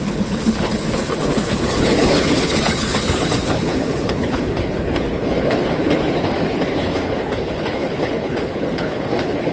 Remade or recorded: remade